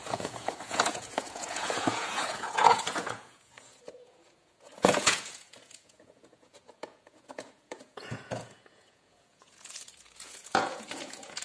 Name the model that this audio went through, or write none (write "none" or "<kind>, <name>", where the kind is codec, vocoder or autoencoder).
vocoder, Vocos